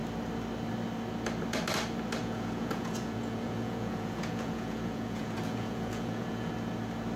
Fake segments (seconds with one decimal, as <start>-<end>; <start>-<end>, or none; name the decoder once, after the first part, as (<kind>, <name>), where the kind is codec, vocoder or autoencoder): 2.2-6.5 (vocoder, Vocos)